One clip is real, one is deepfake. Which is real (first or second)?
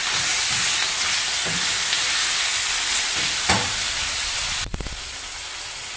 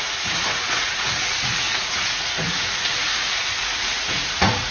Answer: first